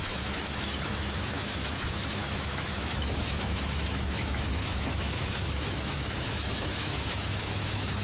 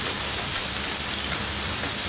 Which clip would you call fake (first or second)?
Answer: first